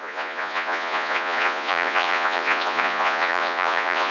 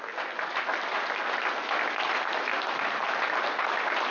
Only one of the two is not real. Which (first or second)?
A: first